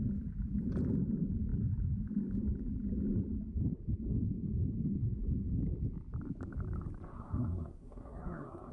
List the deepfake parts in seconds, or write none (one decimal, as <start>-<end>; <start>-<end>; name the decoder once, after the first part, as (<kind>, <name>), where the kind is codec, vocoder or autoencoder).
7.1-8.7 (codec, SNAC)